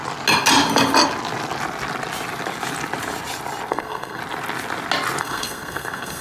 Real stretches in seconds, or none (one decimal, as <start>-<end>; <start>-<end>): 0.0-3.7; 4.2-5.2